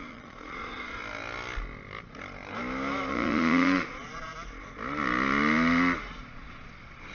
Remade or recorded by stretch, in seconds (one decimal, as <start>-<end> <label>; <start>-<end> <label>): 0.0-1.0 remade; 1.0-3.1 recorded; 3.1-4.3 remade; 4.3-6.1 recorded; 6.1-7.1 remade